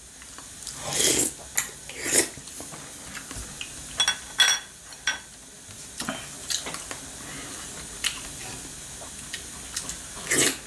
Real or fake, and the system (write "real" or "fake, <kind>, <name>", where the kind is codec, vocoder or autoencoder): real